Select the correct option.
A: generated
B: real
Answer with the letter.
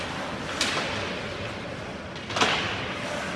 B